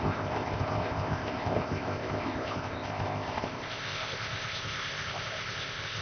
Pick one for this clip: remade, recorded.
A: remade